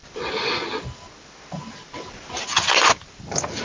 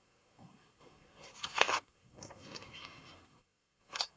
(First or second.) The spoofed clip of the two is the second